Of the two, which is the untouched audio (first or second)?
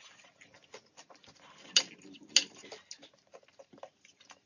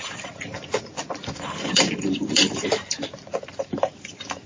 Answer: first